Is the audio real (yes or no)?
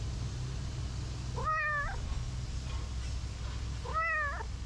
yes